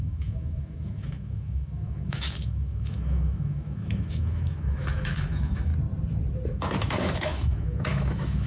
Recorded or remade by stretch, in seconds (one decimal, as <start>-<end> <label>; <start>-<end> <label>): 0.0-5.7 remade; 5.7-6.5 recorded; 6.5-8.5 remade